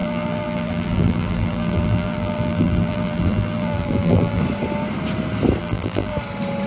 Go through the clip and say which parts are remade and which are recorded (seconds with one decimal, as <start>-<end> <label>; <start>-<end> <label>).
0.0-4.4 remade; 4.4-5.6 recorded; 5.6-6.1 remade; 6.1-6.7 recorded

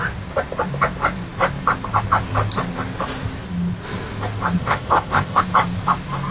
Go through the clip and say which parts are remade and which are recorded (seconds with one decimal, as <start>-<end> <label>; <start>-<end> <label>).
0.0-4.6 recorded; 4.6-5.4 remade; 5.4-6.3 recorded

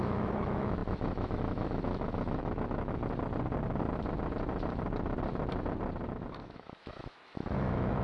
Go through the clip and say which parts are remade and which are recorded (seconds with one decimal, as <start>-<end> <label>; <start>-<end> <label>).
0.0-3.0 remade; 3.0-6.3 recorded; 6.3-8.0 remade

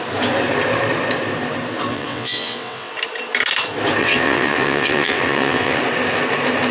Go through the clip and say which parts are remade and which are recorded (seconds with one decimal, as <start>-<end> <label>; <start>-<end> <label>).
0.0-1.9 recorded; 1.9-2.9 remade; 2.9-4.0 recorded; 4.0-5.8 remade; 5.8-6.7 recorded

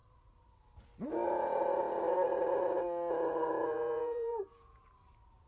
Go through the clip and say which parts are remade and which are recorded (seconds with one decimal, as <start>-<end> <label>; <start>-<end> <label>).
0.0-3.6 recorded; 3.6-4.8 remade; 4.8-5.5 recorded

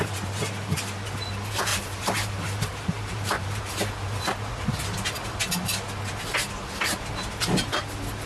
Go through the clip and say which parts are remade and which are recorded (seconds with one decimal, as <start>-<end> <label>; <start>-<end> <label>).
0.0-1.7 recorded; 1.7-3.6 remade; 3.6-8.3 recorded

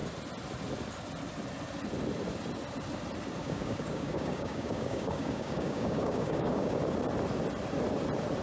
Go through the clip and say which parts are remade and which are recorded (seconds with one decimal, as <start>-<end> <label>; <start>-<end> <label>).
0.0-3.4 recorded; 3.4-6.8 remade; 6.8-8.4 recorded

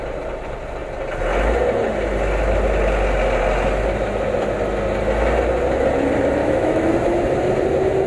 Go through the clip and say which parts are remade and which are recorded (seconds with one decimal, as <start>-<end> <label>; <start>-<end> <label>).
0.0-6.4 recorded; 6.4-6.9 remade; 6.9-8.1 recorded